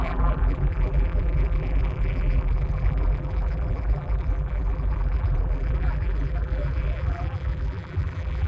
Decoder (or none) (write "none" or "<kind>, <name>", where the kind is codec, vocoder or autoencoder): vocoder, BigVGAN v2